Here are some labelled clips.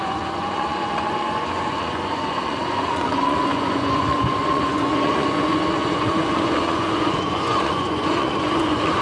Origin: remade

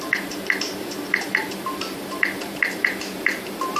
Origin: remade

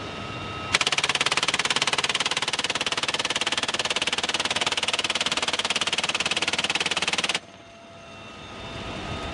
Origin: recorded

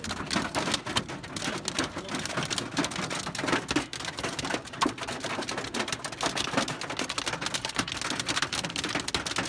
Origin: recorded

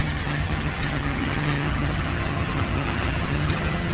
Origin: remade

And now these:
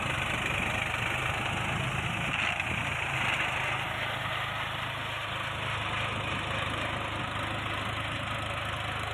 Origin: recorded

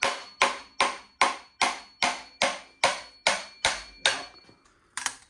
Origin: recorded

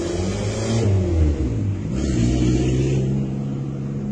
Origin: recorded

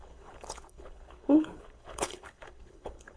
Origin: remade